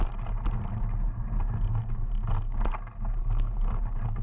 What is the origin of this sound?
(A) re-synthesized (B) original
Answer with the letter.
B